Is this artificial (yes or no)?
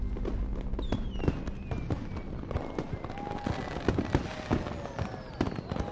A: no